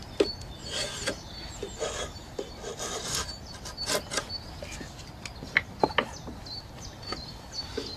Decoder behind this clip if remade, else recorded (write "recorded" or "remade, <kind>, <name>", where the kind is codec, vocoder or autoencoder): recorded